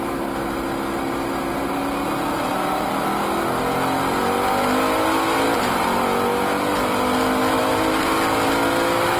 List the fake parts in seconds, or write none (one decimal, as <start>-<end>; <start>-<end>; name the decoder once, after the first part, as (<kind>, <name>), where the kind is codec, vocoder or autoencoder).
0.0-6.3 (vocoder, BigVGAN v2); 7.6-9.2